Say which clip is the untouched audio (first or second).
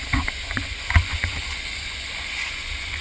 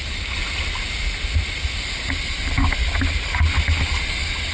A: second